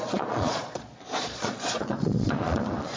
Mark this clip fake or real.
fake